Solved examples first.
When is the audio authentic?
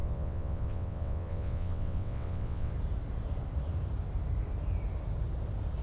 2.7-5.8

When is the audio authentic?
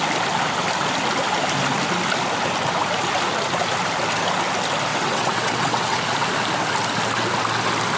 0.0-4.9; 6.0-8.0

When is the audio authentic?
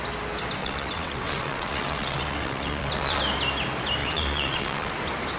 0.0-0.6; 3.2-4.0; 4.9-5.4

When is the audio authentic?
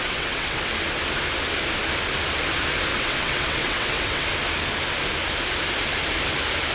0.7-2.9; 4.3-6.7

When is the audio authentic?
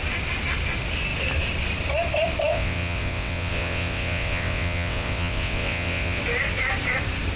0.0-2.5; 6.2-7.4